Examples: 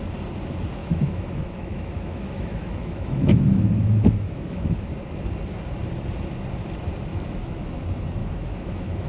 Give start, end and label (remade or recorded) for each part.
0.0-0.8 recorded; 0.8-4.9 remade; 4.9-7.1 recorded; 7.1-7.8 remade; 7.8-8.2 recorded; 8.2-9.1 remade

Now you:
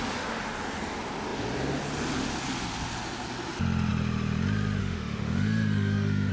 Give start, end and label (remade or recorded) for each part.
0.0-4.8 recorded; 4.8-6.3 remade